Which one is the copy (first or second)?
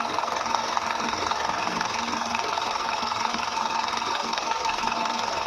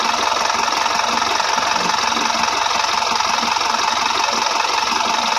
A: first